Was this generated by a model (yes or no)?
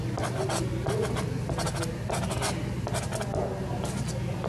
no